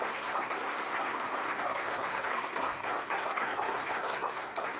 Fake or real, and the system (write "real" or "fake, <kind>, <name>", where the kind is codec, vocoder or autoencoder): fake, codec, SNAC